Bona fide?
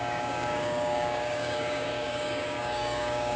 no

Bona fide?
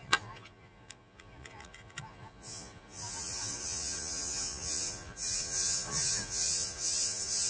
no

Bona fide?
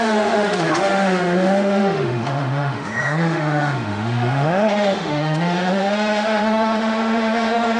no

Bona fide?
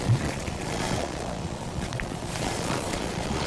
no